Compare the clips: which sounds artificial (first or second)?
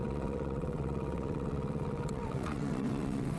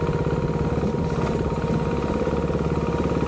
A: first